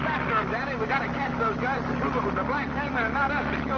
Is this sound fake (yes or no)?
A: no